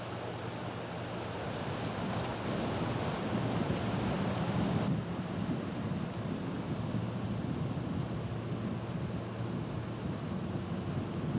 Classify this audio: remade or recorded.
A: recorded